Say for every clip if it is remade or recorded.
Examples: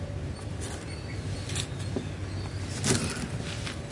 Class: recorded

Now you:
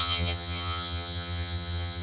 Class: remade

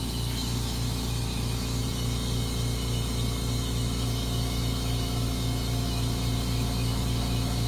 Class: remade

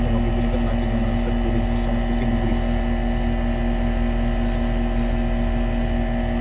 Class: recorded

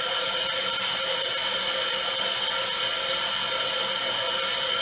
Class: recorded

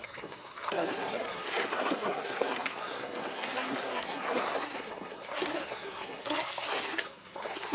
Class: remade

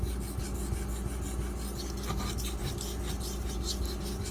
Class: recorded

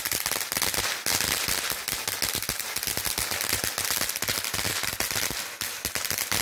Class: recorded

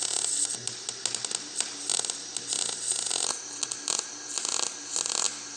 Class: recorded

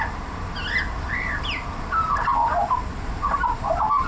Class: recorded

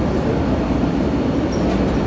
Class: recorded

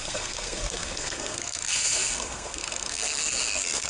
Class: remade